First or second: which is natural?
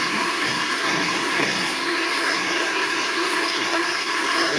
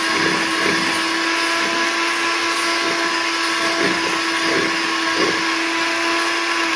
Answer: second